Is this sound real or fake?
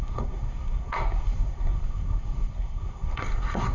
fake